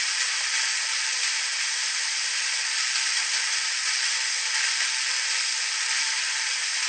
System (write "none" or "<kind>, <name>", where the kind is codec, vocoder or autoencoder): none